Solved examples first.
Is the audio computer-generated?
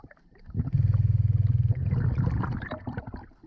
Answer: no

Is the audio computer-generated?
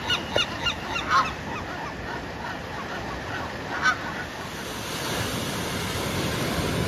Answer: no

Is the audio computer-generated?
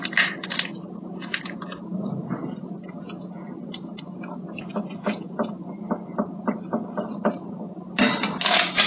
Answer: no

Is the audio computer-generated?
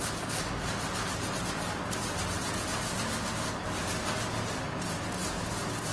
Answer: no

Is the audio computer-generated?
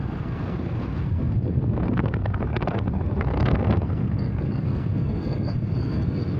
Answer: yes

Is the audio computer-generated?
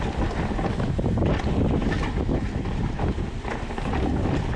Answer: no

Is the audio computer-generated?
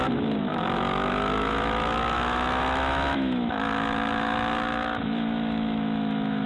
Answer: yes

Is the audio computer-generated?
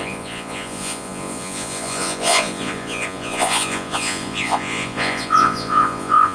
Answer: yes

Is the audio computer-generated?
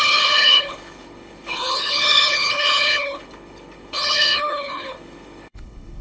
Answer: yes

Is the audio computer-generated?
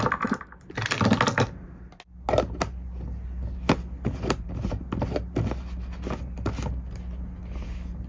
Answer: no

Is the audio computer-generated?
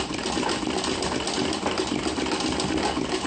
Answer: no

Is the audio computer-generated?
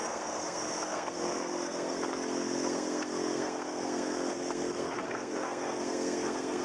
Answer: yes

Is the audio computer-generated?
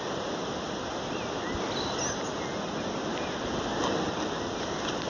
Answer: no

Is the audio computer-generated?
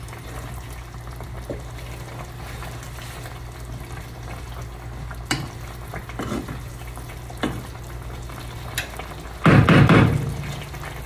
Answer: no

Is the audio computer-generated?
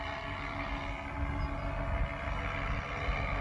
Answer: no